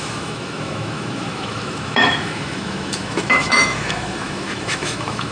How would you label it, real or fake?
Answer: fake